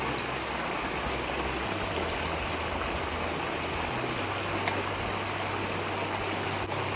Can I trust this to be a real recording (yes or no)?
yes